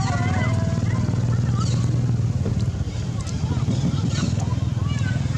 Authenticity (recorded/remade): recorded